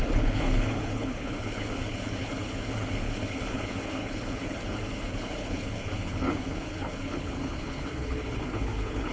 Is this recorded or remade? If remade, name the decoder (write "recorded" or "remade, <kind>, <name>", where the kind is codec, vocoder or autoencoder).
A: remade, codec, HILCodec